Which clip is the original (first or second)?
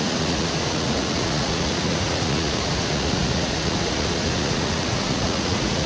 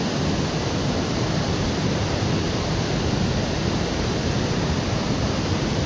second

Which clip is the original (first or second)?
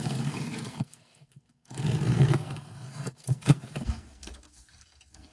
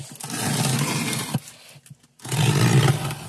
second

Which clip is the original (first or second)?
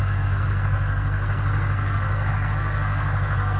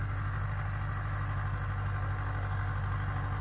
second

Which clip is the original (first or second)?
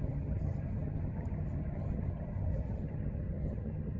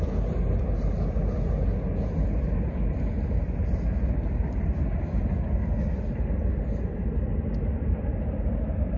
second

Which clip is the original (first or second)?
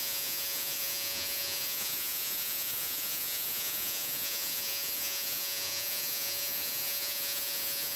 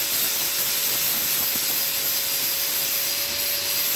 second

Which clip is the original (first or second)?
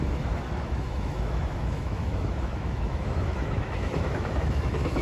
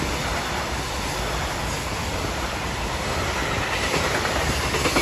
second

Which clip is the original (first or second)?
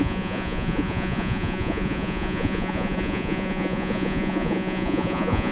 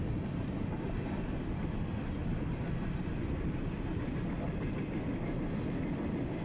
second